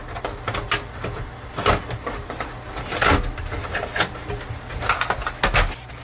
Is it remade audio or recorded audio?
recorded